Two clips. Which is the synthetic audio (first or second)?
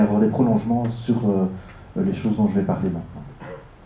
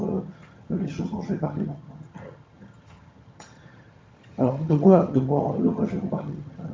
second